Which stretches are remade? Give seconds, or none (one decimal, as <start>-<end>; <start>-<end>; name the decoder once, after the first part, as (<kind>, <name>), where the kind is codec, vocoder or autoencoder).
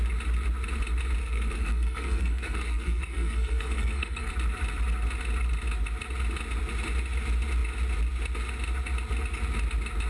1.2-4.3 (codec, SNAC)